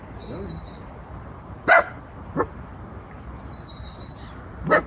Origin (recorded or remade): recorded